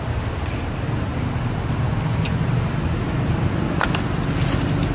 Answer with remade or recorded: recorded